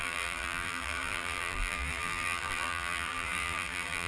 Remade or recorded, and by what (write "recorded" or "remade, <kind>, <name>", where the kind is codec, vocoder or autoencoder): remade, vocoder, BigVGAN v2